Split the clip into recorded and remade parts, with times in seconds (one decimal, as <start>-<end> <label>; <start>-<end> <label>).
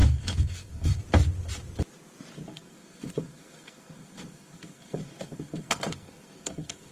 0.0-1.0 remade; 1.0-2.5 recorded; 2.5-6.9 remade